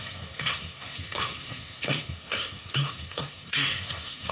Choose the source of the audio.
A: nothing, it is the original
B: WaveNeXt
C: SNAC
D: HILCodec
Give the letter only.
C